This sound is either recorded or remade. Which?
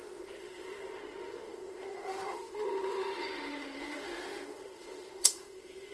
remade